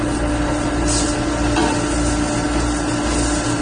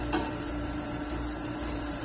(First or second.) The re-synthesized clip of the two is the second